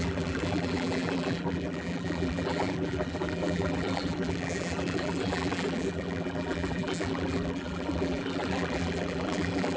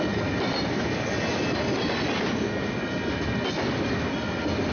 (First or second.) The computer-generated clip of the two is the first